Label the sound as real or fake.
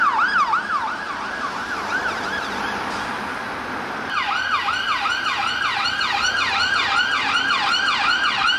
real